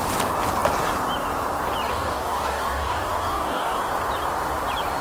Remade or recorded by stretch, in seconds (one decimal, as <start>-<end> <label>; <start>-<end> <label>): 0.0-1.9 recorded; 1.9-3.8 remade; 3.8-5.0 recorded